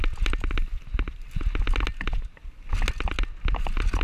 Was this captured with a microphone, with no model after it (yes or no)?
yes